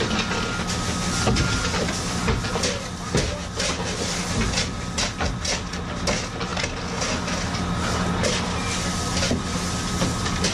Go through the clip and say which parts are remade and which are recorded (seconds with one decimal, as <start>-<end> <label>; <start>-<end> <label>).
0.0-10.5 recorded

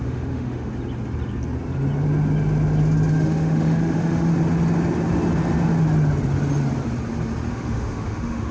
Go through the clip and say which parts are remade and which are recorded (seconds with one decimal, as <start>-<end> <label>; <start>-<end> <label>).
0.0-0.7 remade; 0.7-3.1 recorded; 3.1-4.3 remade; 4.3-7.5 recorded; 7.5-8.5 remade